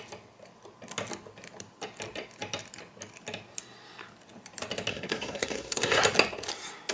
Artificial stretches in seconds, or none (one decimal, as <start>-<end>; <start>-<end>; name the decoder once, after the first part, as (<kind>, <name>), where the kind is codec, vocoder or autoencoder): 4.9-6.0 (codec, SNAC)